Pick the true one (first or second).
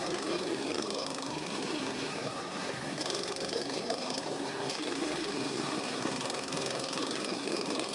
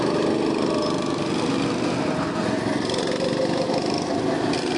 second